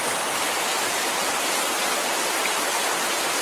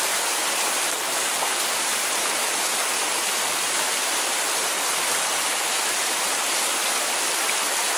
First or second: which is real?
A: first